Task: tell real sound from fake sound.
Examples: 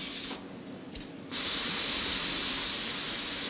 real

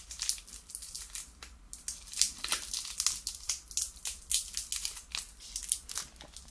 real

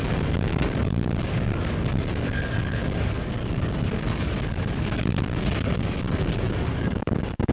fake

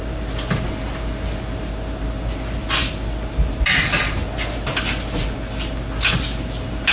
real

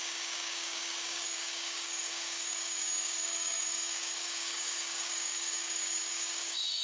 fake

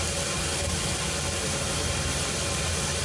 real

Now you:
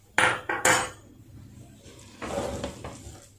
real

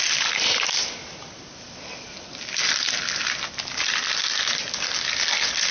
real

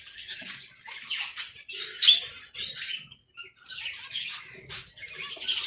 real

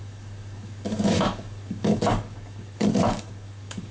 fake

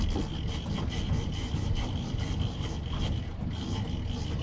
real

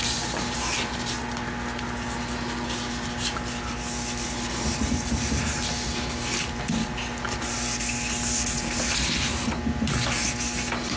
real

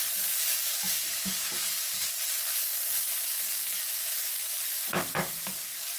fake